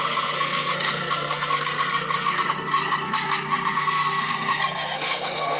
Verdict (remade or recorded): remade